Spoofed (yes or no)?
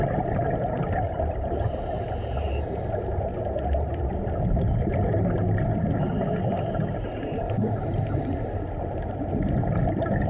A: no